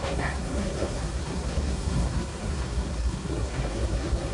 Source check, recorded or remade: remade